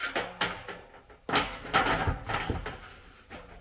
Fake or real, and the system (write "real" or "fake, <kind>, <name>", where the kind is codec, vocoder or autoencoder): real